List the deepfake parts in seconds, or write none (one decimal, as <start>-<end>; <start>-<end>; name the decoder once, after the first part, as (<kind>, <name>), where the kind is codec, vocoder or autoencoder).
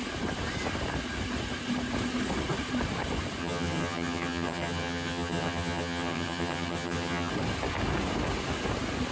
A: 3.4-7.3 (vocoder, HiFi-GAN)